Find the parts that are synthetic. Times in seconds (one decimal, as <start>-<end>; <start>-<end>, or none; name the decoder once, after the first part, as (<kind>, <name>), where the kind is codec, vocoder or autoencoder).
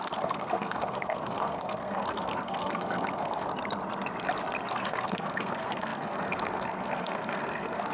0.0-3.5 (codec, SNAC); 4.7-7.9